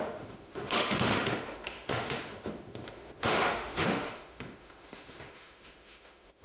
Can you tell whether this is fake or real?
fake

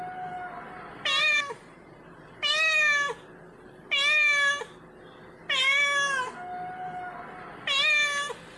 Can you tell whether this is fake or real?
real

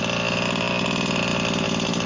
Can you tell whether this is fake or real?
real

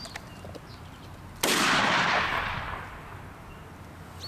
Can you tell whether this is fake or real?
real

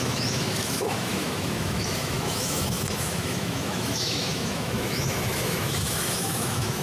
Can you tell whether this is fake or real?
fake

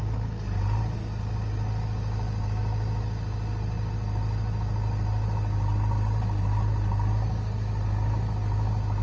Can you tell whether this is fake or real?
real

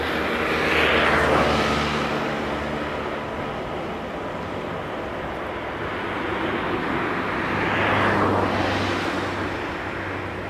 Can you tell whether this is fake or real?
real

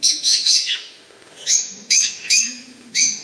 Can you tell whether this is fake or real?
fake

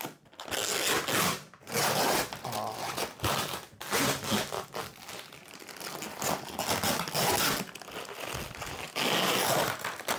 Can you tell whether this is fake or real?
real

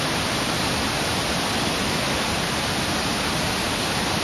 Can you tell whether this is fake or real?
real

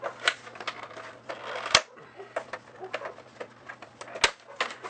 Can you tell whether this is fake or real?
real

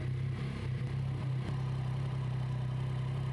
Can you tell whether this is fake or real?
real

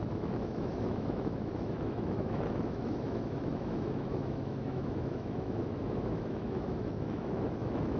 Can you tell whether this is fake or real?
fake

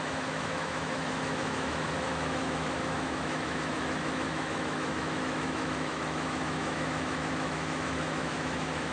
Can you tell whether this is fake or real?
fake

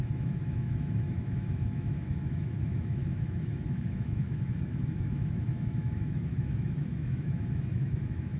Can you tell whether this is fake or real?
fake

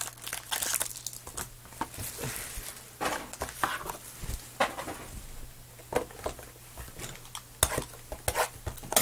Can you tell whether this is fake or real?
real